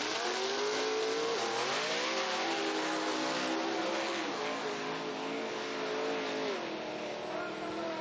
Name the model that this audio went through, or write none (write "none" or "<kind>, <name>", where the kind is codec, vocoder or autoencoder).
none